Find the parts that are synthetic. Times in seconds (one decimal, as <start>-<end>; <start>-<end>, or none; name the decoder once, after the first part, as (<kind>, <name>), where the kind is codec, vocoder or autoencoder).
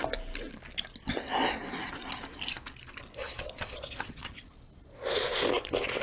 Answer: 3.2-4.5 (vocoder, Vocos)